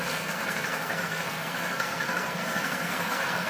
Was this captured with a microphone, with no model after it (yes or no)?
no